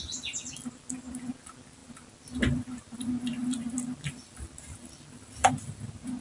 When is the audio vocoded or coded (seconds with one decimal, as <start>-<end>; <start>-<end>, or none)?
none